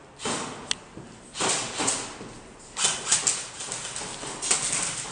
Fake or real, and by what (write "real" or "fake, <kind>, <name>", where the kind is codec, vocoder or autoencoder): real